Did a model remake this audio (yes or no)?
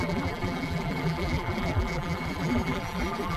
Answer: yes